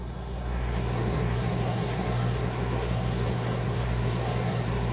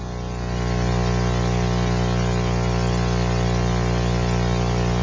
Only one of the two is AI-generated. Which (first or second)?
first